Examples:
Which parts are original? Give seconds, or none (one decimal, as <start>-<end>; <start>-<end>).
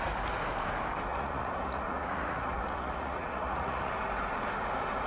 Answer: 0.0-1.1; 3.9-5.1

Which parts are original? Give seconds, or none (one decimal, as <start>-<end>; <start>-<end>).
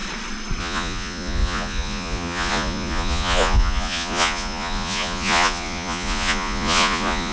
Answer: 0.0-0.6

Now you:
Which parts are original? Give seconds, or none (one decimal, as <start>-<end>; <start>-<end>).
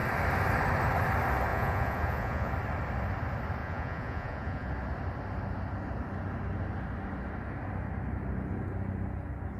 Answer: 0.0-1.5; 2.5-3.6; 4.7-9.6